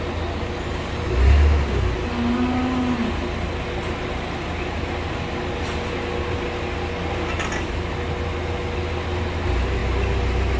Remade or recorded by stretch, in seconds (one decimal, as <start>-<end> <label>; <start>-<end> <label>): 0.0-10.6 recorded